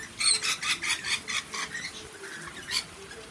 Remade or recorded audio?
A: recorded